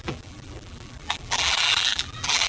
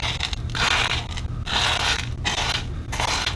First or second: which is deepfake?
first